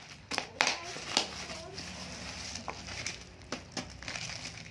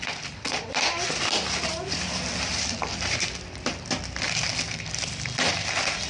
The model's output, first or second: second